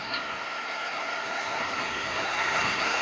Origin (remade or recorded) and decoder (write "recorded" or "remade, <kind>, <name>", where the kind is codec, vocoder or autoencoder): remade, codec, SNAC